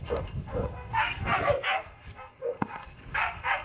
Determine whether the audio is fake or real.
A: fake